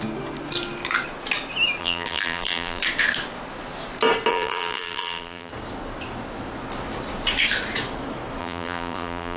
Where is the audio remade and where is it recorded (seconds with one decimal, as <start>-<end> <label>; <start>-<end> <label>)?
0.0-1.8 recorded; 1.8-2.8 remade; 2.8-4.3 recorded; 4.3-5.5 remade; 5.5-8.4 recorded; 8.4-9.4 remade